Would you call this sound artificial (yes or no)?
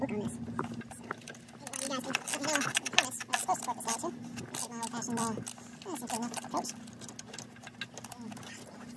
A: no